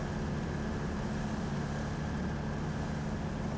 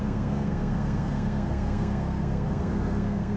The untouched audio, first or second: first